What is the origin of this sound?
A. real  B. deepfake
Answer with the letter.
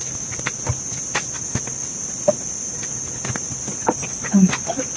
A